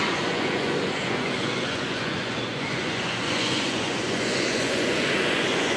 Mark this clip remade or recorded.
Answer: remade